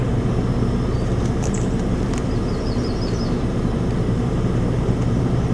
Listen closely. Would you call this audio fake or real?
fake